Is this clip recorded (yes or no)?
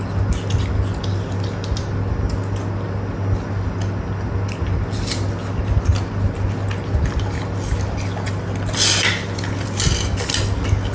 yes